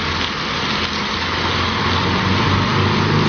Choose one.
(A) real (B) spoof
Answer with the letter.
A